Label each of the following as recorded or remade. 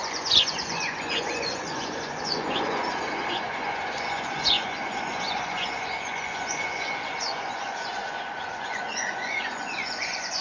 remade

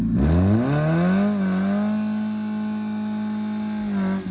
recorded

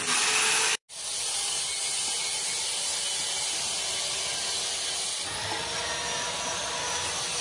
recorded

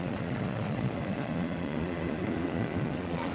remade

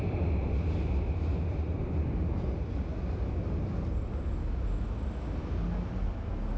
recorded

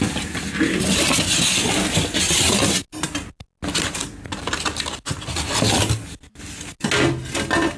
recorded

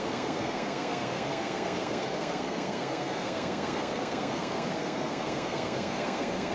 remade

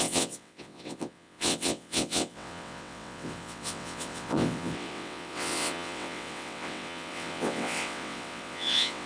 remade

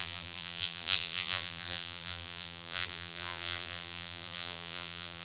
remade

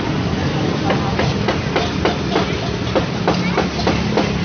recorded